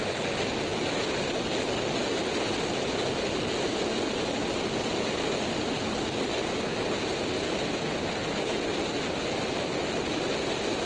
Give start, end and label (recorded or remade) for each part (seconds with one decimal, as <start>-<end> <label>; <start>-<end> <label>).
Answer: 0.0-10.9 recorded